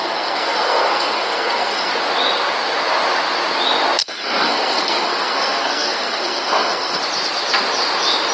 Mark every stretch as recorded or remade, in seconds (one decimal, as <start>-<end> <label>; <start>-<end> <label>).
0.0-1.9 remade; 1.9-4.0 recorded; 4.0-7.0 remade; 7.0-8.3 recorded